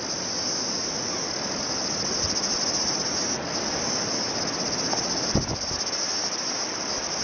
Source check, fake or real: real